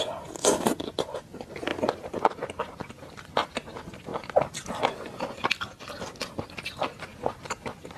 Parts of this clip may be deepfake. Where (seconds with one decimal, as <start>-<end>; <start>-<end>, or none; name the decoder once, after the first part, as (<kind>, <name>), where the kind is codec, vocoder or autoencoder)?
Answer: none